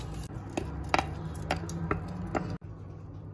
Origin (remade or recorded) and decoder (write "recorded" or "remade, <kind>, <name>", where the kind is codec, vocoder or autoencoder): recorded